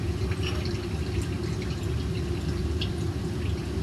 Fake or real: real